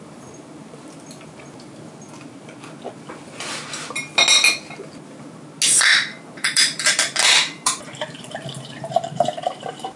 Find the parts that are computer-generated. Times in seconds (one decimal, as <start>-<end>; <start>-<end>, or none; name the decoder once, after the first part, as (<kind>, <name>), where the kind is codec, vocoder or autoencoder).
6.1-10.0 (vocoder, BigVGAN v2)